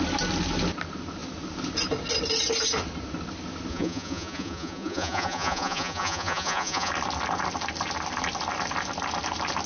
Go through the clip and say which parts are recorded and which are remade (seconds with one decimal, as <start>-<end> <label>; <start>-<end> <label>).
0.0-3.7 recorded; 3.7-6.9 remade; 6.9-9.7 recorded